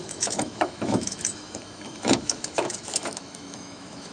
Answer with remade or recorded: remade